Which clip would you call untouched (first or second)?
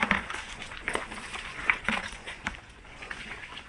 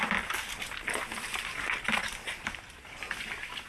second